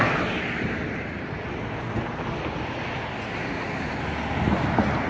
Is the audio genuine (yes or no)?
yes